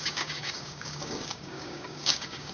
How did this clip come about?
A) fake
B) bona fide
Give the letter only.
A